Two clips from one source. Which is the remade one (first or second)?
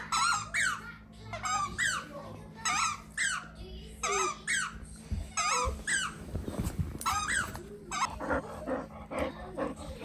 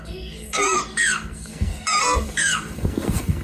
second